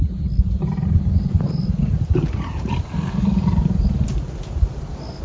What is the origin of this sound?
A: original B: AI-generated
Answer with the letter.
A